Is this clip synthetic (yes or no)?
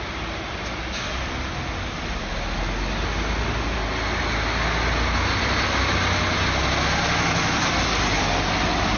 no